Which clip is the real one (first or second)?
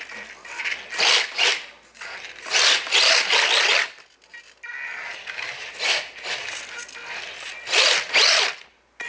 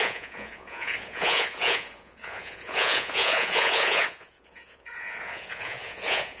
first